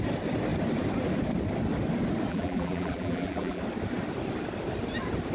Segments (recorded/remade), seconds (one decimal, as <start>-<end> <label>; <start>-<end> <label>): 0.0-2.3 recorded; 2.3-3.6 remade; 3.6-5.3 recorded